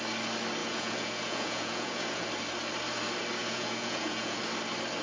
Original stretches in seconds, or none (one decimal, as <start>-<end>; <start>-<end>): 0.0-0.6; 2.3-3.4; 4.4-5.0